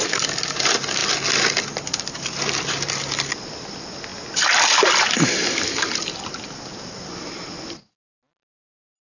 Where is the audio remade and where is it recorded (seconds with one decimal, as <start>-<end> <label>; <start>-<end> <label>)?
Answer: 0.0-9.0 recorded